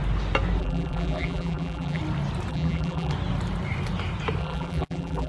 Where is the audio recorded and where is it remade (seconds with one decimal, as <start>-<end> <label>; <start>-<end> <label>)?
0.0-0.6 recorded; 0.6-2.0 remade; 2.0-2.5 recorded; 2.5-3.1 remade; 3.1-4.4 recorded; 4.4-5.3 remade